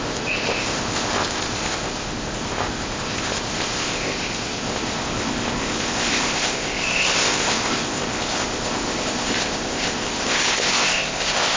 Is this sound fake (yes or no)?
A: yes